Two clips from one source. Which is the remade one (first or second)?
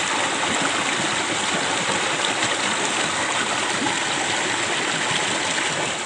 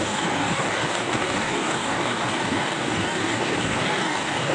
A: second